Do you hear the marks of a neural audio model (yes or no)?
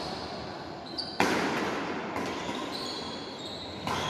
no